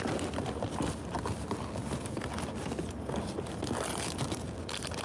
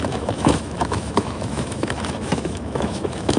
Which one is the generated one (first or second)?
second